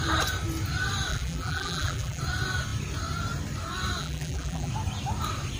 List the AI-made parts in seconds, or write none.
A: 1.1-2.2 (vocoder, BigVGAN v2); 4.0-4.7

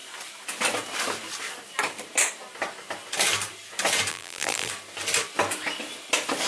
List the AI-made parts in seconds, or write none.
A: 4.1-4.7 (vocoder, BigVGAN v2)